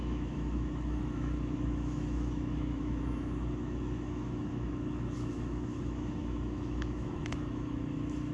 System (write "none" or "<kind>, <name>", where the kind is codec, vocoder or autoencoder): autoencoder, DAC-VAE